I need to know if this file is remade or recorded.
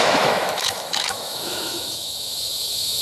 remade